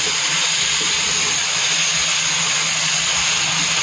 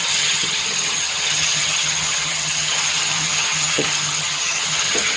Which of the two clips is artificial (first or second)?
second